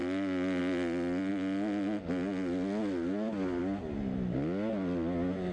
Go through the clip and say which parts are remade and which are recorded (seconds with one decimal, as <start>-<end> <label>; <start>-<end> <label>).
0.0-5.5 recorded